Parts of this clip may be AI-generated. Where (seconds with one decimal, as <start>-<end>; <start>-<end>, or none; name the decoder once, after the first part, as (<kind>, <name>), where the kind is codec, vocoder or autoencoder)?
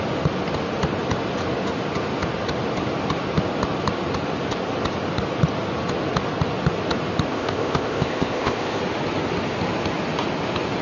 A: 7.3-8.8 (codec, ZipCodec)